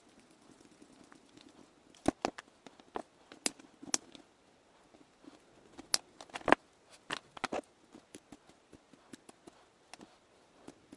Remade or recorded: recorded